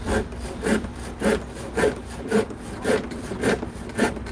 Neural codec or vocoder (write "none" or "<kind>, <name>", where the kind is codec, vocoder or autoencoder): none